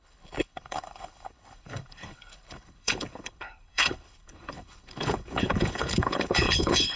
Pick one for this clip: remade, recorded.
remade